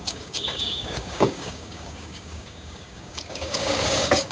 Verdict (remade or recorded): remade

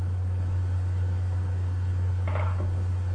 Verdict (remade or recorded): remade